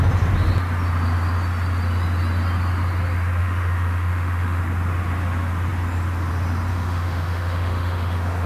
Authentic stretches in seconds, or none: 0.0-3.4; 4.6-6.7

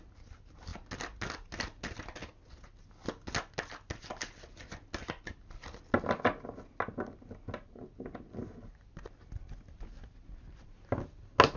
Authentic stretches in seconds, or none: 0.0-11.6

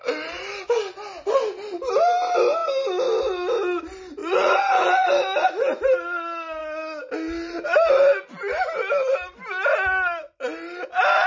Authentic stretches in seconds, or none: 0.0-4.2; 5.1-11.3

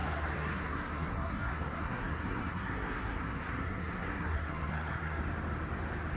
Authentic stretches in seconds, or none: 5.2-6.2

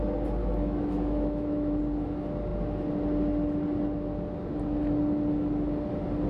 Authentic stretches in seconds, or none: 0.0-0.4; 1.8-6.3

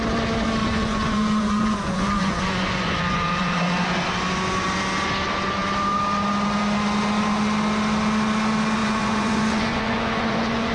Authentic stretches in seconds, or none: 0.0-0.6; 3.6-8.8